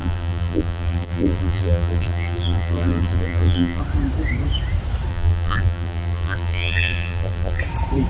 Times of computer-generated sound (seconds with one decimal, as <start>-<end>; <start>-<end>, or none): 0.0-3.8; 5.1-7.6